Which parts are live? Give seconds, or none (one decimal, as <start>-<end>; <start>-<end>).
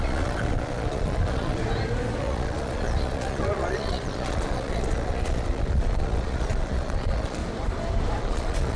1.6-2.2; 7.4-8.2